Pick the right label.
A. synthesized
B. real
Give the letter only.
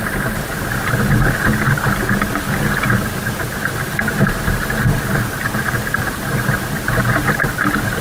B